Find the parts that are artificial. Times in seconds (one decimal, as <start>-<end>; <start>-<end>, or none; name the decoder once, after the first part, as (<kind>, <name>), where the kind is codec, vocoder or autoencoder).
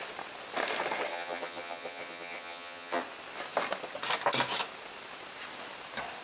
1.1-3.0 (vocoder, HiFi-GAN)